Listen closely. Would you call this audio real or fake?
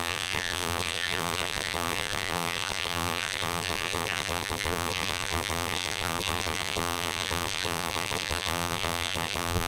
fake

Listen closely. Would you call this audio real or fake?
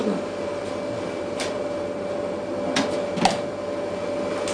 real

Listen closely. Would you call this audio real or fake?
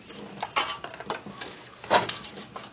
real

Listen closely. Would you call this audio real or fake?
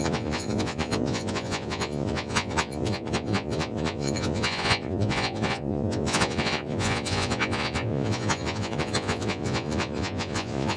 fake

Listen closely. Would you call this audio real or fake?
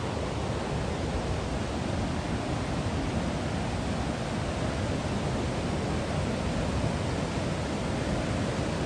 real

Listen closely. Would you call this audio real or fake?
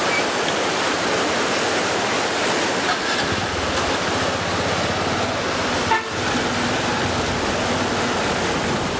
real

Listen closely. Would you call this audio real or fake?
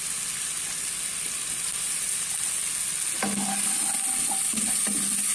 real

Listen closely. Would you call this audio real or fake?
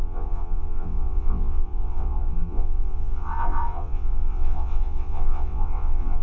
fake